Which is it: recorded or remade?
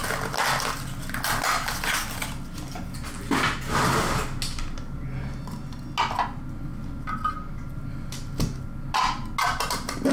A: recorded